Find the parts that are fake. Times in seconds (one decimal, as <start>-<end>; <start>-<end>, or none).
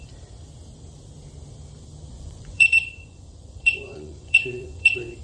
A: 2.1-5.2